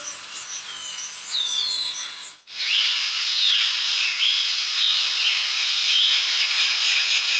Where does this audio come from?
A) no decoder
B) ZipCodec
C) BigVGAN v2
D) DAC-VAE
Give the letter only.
A